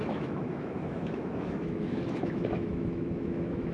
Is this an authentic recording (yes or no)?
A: no